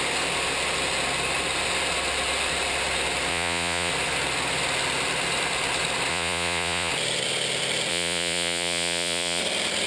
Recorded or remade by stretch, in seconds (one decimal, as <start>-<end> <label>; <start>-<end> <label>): 0.0-3.3 recorded; 3.3-3.9 remade; 3.9-6.1 recorded; 6.1-6.9 remade; 6.9-7.9 recorded; 7.9-9.4 remade; 9.4-9.9 recorded